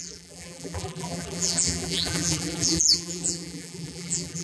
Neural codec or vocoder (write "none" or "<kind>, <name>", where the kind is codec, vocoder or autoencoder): vocoder, BigVGAN v2